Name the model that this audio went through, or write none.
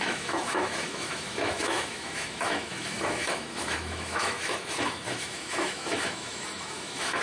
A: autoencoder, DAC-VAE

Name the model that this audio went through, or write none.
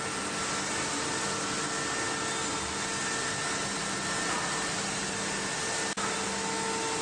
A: none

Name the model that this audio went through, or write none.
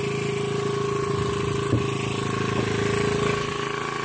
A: none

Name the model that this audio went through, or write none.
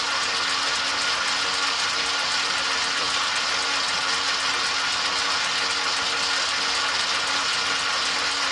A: none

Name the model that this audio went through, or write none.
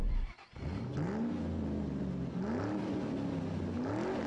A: none